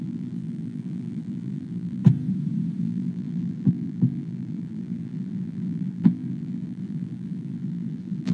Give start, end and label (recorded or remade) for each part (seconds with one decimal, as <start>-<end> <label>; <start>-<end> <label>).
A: 0.0-2.0 remade; 2.0-2.8 recorded; 2.8-8.3 remade